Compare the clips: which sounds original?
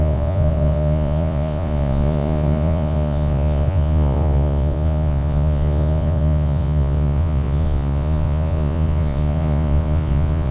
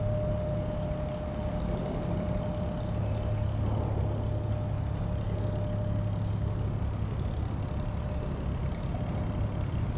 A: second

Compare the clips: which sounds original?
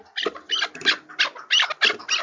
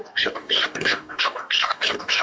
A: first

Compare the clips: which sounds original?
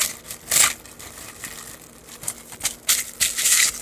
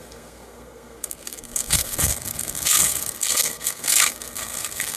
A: first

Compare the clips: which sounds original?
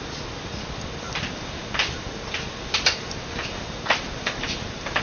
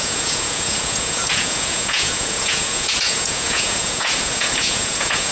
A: first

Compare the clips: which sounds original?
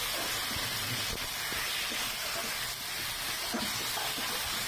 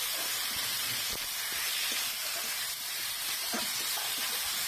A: first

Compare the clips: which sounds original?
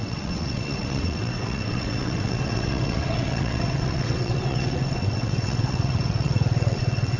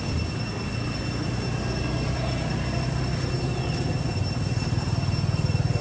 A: second